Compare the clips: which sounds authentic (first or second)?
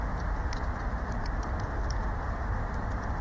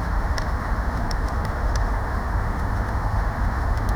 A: first